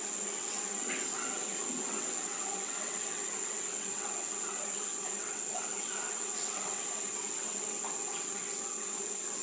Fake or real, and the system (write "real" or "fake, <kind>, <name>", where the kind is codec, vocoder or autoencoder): fake, vocoder, WaveNeXt